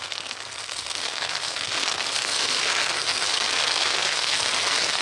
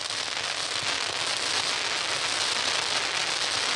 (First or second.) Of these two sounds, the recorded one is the second